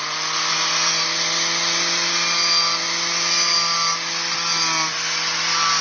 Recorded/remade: recorded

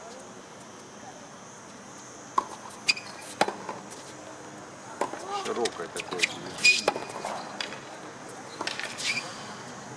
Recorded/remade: recorded